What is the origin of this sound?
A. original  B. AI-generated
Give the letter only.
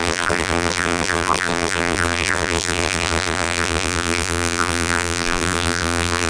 B